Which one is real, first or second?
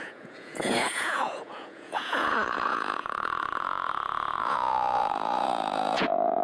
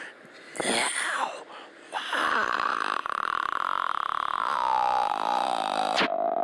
second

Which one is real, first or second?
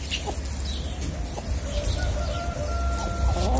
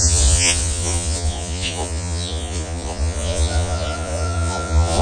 first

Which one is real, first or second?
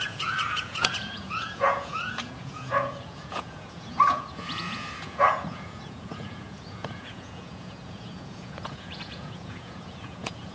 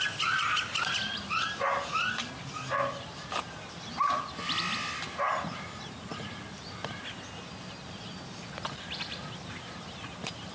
second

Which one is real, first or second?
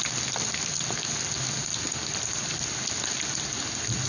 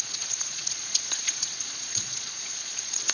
first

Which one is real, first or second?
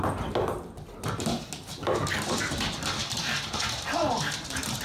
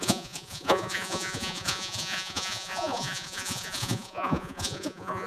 first